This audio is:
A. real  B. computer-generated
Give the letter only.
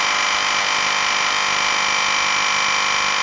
A